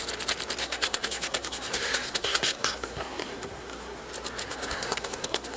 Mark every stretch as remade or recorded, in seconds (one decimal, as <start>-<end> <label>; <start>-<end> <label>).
0.0-0.6 recorded; 0.6-4.0 remade; 4.0-4.4 recorded; 4.4-5.6 remade